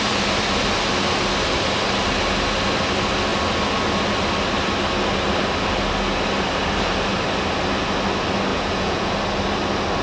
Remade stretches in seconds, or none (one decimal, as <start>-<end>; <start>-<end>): 8.5-9.1